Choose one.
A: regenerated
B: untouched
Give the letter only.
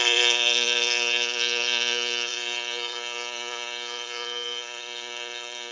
A